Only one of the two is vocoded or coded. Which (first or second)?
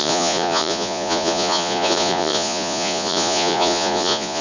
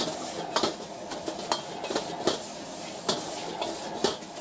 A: first